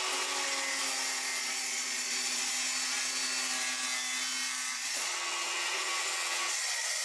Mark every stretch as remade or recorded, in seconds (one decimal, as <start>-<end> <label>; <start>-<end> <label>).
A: 0.0-1.3 recorded; 1.3-2.5 remade; 2.5-4.7 recorded; 4.7-7.0 remade

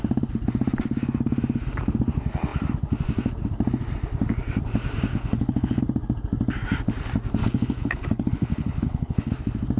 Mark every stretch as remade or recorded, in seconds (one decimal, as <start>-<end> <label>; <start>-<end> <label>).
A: 0.0-5.1 recorded; 5.1-5.8 remade; 5.8-7.4 recorded; 7.4-9.3 remade; 9.3-9.8 recorded

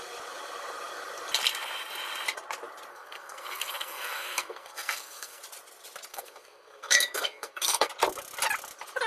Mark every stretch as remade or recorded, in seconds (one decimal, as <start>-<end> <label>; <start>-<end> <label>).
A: 0.0-2.9 recorded; 2.9-5.4 remade; 5.4-6.1 recorded; 6.1-7.9 remade; 7.9-9.1 recorded